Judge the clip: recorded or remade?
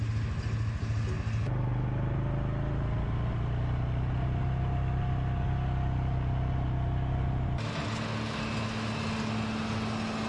recorded